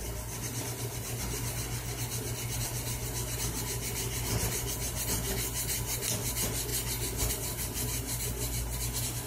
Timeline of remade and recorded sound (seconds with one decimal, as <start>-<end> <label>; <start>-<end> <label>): 0.0-9.3 recorded